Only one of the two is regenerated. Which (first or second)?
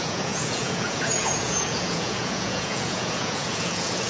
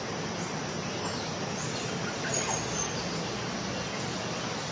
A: first